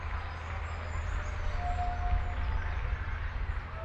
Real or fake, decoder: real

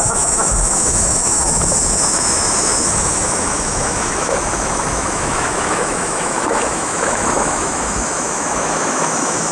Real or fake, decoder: fake, autoencoder, DAC-VAE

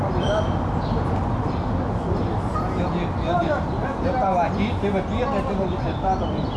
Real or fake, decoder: real